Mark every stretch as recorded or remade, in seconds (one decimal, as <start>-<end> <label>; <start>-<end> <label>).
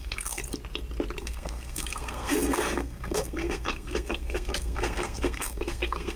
0.0-0.4 remade; 0.4-1.2 recorded; 1.2-6.2 remade